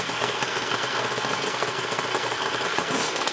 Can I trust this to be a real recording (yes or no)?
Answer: no